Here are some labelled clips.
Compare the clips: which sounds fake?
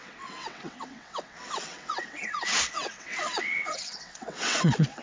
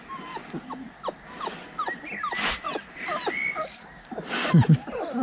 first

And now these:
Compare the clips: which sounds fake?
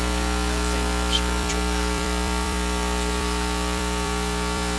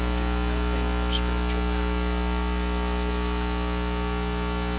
first